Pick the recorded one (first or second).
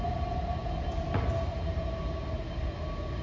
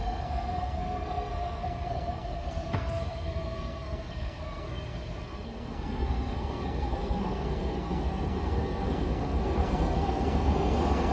first